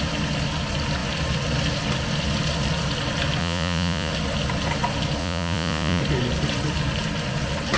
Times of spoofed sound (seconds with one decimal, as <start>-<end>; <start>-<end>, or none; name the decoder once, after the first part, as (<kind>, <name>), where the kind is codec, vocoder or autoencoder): 3.4-4.1 (vocoder, Vocos); 5.2-6.0